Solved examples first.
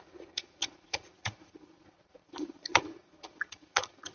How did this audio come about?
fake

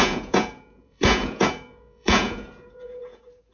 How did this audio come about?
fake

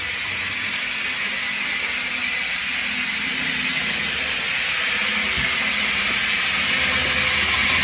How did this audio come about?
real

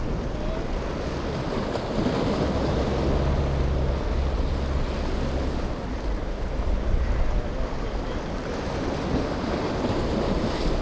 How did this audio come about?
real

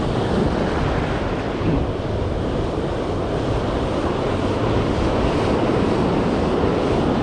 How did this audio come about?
real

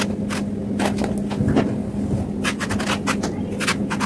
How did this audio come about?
real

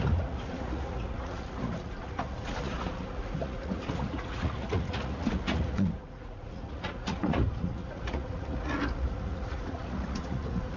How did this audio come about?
fake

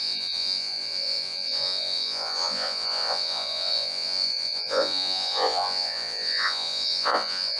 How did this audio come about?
fake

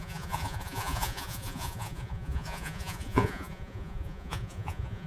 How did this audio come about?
fake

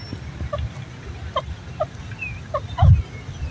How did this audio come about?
real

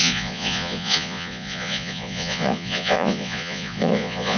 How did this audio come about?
fake